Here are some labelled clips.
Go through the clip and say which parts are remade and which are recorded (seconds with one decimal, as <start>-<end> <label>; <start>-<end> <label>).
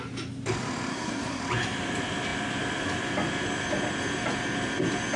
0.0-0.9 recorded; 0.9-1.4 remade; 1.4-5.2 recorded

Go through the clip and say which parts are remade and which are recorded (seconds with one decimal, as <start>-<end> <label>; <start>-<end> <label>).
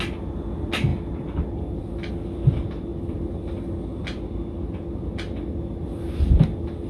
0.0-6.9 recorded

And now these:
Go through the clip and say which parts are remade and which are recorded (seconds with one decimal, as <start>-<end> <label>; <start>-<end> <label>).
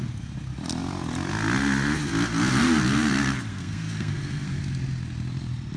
0.0-3.5 recorded; 3.5-4.6 remade; 4.6-5.8 recorded